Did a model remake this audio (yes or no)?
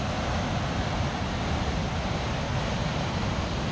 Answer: no